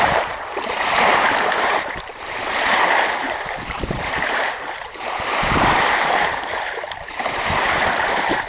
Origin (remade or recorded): remade